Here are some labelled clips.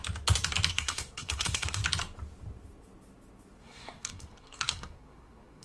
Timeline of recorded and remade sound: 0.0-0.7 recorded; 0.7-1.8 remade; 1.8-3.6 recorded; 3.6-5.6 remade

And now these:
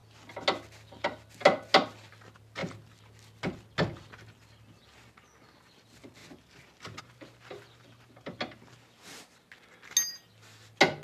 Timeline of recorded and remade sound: 0.0-11.0 recorded

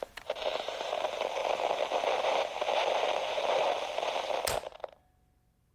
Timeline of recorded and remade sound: 0.0-5.7 recorded

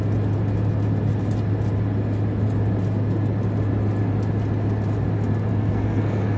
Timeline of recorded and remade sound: 0.0-5.5 recorded; 5.5-6.4 remade

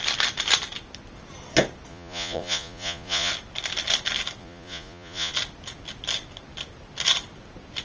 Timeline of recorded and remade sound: 0.0-1.9 recorded; 1.9-3.3 remade; 3.3-4.4 recorded; 4.4-5.3 remade; 5.3-7.8 recorded

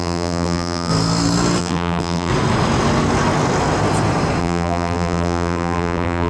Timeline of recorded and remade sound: 0.0-0.9 remade; 0.9-1.6 recorded; 1.6-2.3 remade; 2.3-4.4 recorded; 4.4-6.3 remade